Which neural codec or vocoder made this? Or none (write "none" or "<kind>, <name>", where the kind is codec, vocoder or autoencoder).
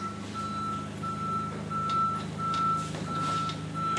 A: none